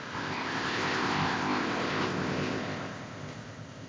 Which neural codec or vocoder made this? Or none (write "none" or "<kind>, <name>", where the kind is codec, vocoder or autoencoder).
codec, ZipCodec